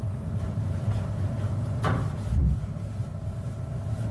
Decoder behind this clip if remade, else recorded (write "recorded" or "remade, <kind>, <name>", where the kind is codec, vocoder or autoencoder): remade, vocoder, BigVGAN v2